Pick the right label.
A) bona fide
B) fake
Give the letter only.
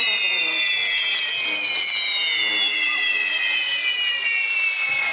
A